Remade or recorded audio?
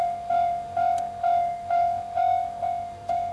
remade